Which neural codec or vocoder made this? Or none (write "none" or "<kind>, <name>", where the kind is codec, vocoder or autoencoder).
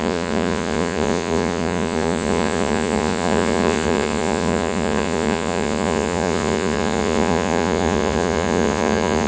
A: vocoder, Vocos